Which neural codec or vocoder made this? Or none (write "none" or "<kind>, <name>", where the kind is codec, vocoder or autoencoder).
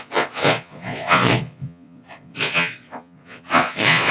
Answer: vocoder, Vocos